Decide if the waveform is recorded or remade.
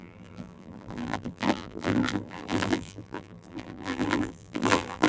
remade